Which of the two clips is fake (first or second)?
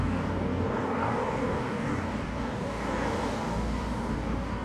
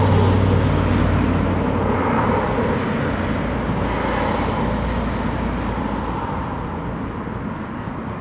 first